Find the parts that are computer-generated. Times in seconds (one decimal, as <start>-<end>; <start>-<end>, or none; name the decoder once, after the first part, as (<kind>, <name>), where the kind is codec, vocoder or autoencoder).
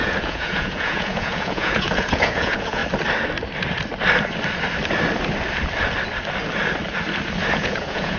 0.0-2.8 (vocoder, Vocos); 7.5-8.2